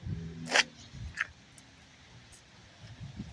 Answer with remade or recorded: recorded